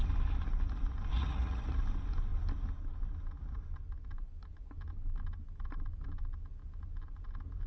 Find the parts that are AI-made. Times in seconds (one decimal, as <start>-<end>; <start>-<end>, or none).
1.1-1.8